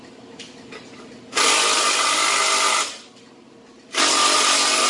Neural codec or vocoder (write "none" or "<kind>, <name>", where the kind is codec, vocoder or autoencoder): none